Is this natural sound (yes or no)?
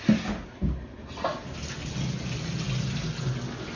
yes